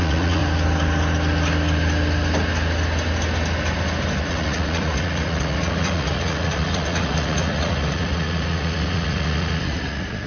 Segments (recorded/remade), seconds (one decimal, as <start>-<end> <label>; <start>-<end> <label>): 0.0-0.4 remade; 0.4-4.2 recorded; 4.2-10.3 remade